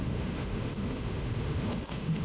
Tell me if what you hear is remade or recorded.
remade